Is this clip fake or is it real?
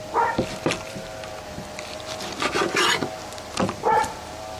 real